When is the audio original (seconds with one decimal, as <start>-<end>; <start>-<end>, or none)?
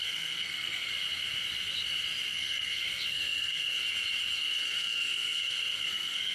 0.9-2.3; 3.8-4.4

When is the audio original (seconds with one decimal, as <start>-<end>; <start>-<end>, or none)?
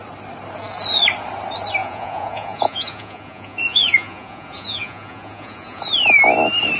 0.0-1.8; 5.8-6.8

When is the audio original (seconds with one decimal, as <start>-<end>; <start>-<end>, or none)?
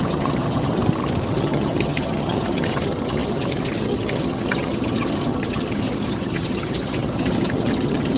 0.8-1.3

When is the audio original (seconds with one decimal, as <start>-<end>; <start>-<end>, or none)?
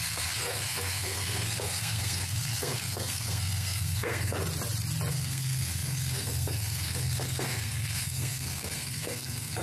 4.4-5.1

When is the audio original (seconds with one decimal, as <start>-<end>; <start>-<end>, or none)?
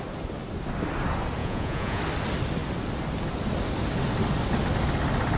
0.0-1.4; 2.0-5.4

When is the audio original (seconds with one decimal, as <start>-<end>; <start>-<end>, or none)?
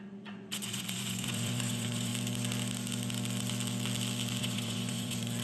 2.1-4.4